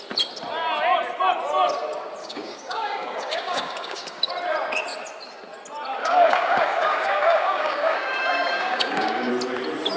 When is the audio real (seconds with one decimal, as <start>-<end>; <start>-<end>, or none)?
0.0-2.2; 4.3-6.0; 9.3-10.0

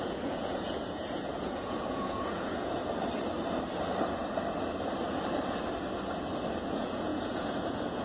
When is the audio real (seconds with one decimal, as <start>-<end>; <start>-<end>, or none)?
2.8-6.6